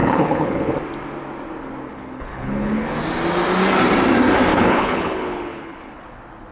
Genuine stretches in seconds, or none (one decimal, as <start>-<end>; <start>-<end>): 0.7-1.9; 3.0-4.5; 6.1-6.5